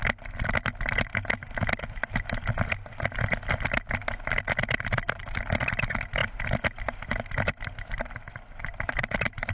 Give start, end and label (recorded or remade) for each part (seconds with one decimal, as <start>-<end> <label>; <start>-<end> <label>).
0.0-5.2 recorded; 5.2-6.2 remade; 6.2-7.5 recorded; 7.5-9.5 remade